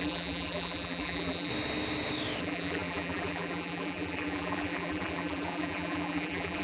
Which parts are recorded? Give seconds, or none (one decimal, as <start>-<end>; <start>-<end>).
1.5-2.4